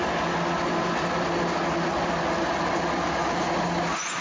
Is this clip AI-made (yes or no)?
no